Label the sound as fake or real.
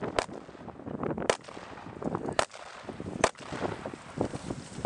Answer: real